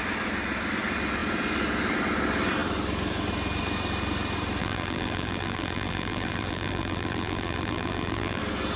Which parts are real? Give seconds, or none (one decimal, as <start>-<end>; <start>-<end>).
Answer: 0.0-4.6; 8.4-8.8